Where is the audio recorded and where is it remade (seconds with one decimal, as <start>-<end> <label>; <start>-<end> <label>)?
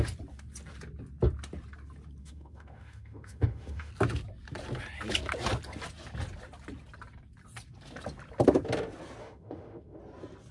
0.0-2.2 recorded; 2.2-3.9 remade; 3.9-9.2 recorded; 9.2-10.0 remade; 10.0-10.5 recorded